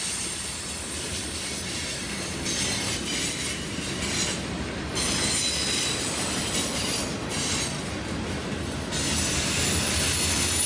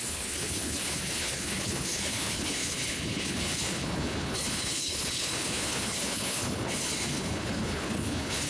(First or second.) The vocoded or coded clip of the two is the second